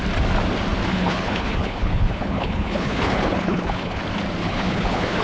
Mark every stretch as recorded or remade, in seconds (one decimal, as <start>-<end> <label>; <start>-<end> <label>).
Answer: 0.0-0.9 recorded; 0.9-4.0 remade; 4.0-4.4 recorded; 4.4-5.2 remade